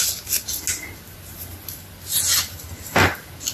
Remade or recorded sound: recorded